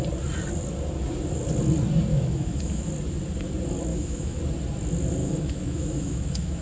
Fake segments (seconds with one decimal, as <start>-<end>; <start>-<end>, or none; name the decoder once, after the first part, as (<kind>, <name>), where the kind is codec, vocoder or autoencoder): 2.1-2.9 (autoencoder, DAC-VAE); 3.9-4.4; 5.2-6.6